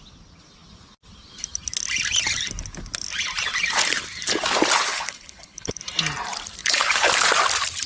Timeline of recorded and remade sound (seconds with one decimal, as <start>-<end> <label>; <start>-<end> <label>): 0.0-4.9 recorded; 4.9-5.8 remade; 5.8-6.6 recorded; 6.6-7.1 remade; 7.1-7.9 recorded